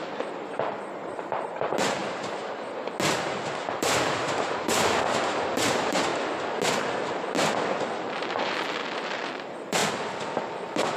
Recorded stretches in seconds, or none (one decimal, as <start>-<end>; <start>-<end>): 2.0-3.5; 6.1-8.0; 9.8-10.4